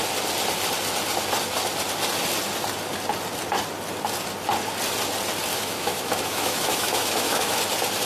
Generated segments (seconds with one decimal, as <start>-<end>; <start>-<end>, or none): 5.5-7.6